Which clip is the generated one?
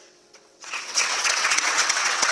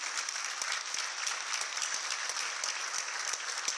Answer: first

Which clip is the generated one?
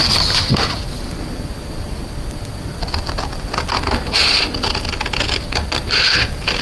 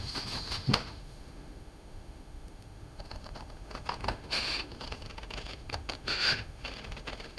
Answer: second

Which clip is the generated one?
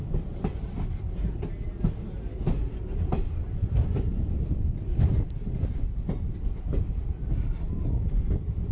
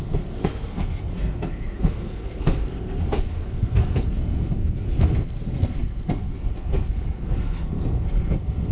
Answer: second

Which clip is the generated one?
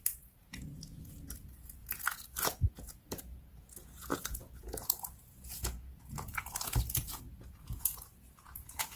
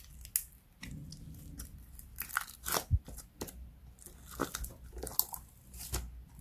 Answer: first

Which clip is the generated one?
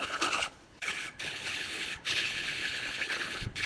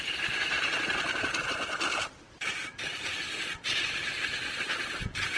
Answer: first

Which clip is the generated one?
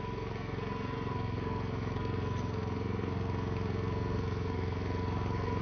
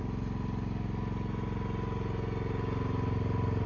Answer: first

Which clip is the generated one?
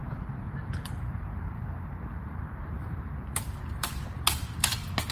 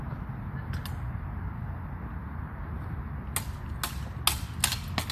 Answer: first